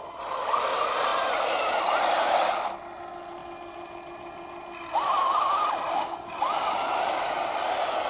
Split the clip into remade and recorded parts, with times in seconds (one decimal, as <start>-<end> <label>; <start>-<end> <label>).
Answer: 0.0-8.1 recorded